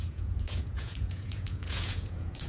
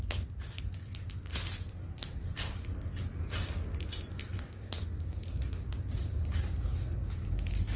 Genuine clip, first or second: second